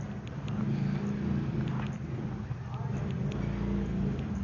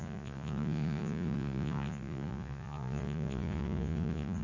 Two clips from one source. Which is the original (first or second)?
first